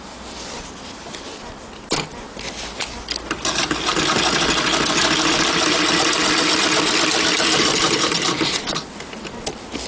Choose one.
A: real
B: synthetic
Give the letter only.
A